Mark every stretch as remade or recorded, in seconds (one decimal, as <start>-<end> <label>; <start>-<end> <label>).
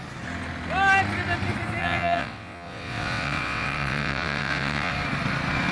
0.0-1.8 recorded; 1.8-4.9 remade; 4.9-5.7 recorded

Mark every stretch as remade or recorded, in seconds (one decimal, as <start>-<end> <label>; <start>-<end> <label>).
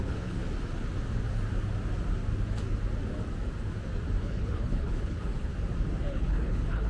0.0-0.4 remade; 0.4-4.2 recorded; 4.2-5.5 remade; 5.5-6.1 recorded; 6.1-6.9 remade